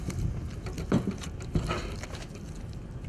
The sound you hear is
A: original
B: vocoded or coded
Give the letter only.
A